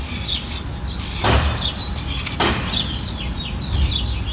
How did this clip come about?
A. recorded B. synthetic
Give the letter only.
A